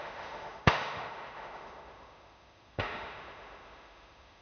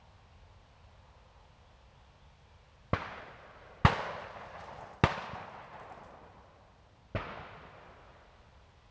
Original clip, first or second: second